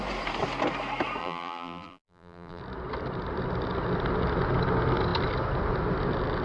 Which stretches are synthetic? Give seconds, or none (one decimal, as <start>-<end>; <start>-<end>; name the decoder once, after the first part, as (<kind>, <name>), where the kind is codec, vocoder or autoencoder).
1.2-2.6 (vocoder, BigVGAN v2)